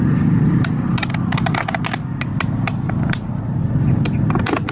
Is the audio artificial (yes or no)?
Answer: no